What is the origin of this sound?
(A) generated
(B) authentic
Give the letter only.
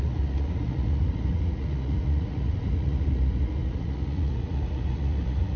A